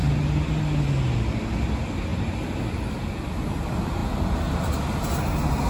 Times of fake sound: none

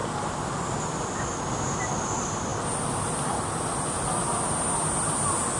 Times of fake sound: none

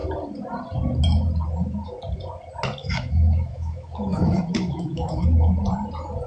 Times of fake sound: 2.8-5.5 (autoencoder, DAC-VAE)